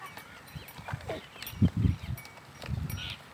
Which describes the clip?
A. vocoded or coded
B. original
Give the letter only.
B